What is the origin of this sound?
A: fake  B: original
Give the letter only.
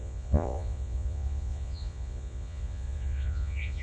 A